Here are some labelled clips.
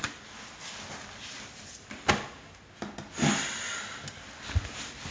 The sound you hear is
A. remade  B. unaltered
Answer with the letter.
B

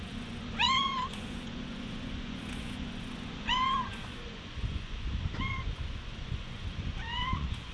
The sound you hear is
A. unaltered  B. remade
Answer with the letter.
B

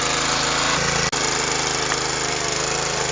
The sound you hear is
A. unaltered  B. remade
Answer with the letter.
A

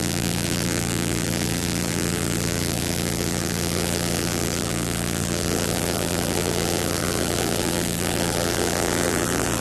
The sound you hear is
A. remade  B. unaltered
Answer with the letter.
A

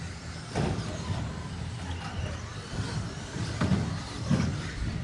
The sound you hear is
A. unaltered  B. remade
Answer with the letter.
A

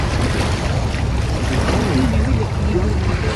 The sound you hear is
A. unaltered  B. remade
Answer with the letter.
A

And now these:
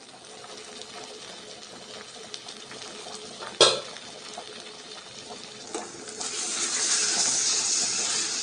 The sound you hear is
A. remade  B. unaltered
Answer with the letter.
B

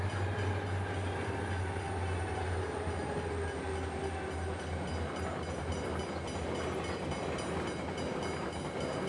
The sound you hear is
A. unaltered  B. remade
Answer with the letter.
A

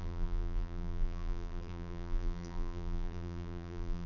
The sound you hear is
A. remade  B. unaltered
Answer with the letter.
A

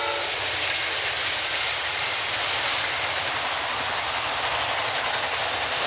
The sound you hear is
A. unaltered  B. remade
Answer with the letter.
A